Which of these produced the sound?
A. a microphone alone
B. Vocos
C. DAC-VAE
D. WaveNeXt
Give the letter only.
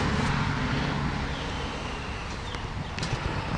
A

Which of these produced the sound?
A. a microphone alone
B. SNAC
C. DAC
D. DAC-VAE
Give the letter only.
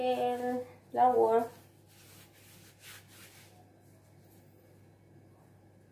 A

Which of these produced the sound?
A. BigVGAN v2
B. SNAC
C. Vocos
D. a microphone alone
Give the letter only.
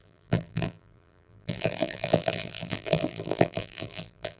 A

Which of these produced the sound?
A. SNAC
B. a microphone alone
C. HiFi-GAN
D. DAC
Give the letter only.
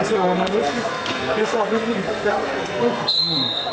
A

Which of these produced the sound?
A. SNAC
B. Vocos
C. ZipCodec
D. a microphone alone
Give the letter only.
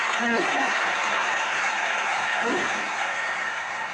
A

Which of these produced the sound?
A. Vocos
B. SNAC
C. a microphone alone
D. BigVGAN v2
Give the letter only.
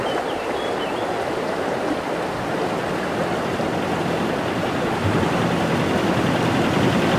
C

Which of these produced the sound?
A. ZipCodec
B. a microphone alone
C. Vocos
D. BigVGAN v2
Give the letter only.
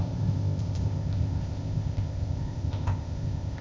A